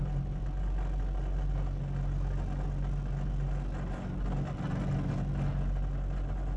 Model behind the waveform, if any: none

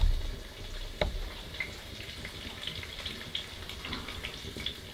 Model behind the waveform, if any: none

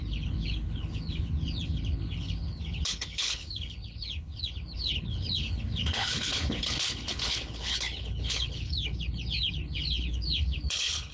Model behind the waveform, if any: codec, HILCodec